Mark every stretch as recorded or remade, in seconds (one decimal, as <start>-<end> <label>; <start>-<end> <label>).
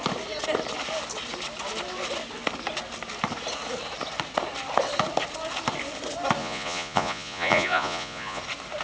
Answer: 0.0-6.4 recorded; 6.4-8.4 remade; 8.4-8.8 recorded